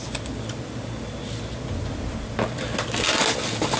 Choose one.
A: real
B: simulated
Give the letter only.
A